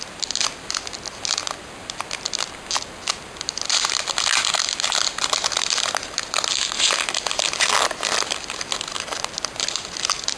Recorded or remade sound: recorded